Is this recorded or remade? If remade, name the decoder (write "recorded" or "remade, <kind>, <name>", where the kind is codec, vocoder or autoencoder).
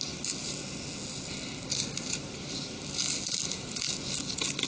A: recorded